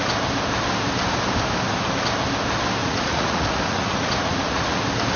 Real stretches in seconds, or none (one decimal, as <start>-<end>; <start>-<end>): 0.0-2.8; 4.8-5.2